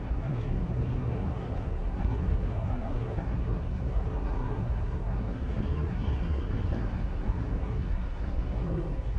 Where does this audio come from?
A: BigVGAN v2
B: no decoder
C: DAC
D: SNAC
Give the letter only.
D